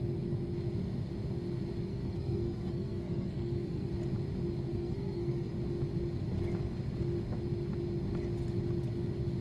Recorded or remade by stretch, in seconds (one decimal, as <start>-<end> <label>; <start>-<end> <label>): 0.0-1.9 recorded; 1.9-3.9 remade; 3.9-4.7 recorded; 4.7-5.5 remade; 5.5-9.4 recorded